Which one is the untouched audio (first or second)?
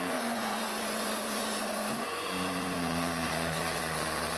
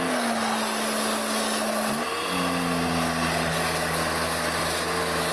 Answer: second